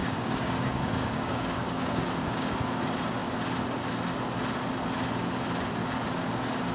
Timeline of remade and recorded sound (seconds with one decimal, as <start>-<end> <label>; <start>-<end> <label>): 0.0-2.6 remade; 2.6-6.7 recorded